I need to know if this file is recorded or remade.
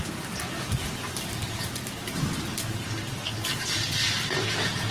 recorded